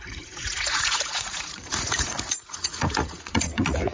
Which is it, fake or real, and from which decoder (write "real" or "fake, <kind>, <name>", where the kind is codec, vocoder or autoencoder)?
fake, vocoder, Vocos